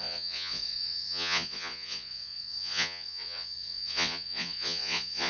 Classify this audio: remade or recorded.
remade